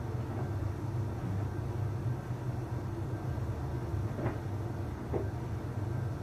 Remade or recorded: recorded